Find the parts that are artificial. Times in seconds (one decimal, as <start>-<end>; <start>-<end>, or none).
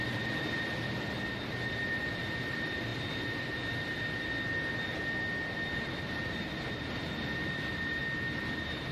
0.0-2.9; 6.7-8.0